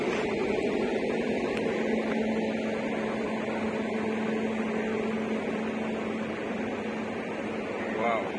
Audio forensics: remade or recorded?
recorded